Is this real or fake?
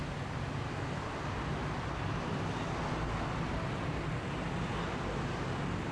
real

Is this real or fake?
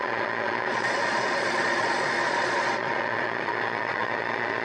fake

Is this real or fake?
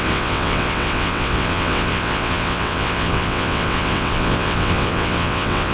fake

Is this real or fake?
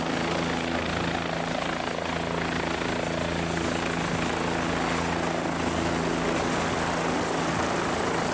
real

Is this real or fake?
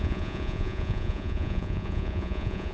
fake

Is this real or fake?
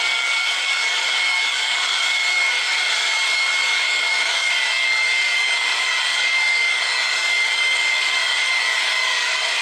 fake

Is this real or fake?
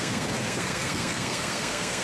fake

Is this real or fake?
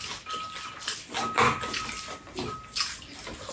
real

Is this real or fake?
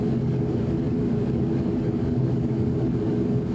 fake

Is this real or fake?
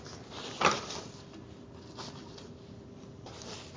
real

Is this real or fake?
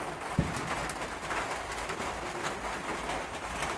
real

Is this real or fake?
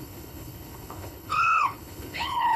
fake